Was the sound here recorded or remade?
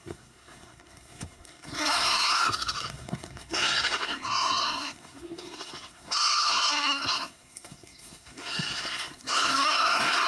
remade